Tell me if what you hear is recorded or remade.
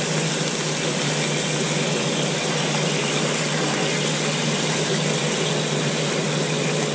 recorded